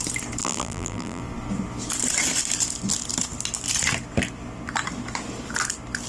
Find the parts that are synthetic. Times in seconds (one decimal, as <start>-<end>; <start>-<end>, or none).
0.4-1.2